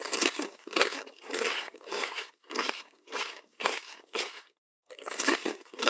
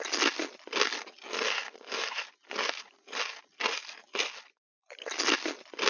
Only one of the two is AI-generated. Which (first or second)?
first